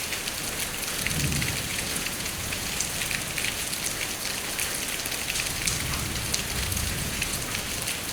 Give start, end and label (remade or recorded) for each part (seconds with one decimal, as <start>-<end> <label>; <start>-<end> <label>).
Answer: 0.0-1.7 recorded; 1.7-2.7 remade; 2.7-6.7 recorded; 6.7-7.4 remade; 7.4-8.1 recorded